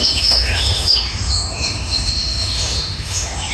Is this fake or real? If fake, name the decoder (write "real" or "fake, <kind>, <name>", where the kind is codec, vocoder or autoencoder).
fake, autoencoder, DAC-VAE